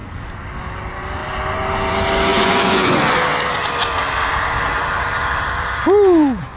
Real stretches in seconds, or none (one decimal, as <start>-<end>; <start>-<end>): 0.0-2.3; 3.2-5.8